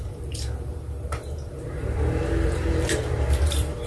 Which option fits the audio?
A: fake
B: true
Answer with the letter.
A